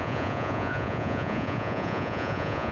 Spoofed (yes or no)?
yes